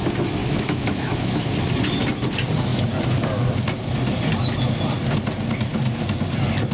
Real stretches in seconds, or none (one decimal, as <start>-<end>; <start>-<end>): 0.0-0.4; 1.5-6.7